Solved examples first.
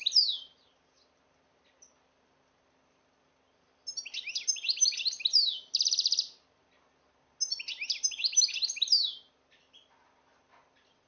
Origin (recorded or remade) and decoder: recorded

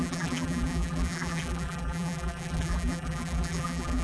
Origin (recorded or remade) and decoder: remade, vocoder, BigVGAN v2